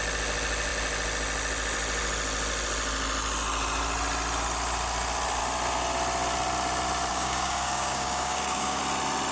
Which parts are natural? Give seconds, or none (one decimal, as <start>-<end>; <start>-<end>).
0.0-7.1; 8.8-9.3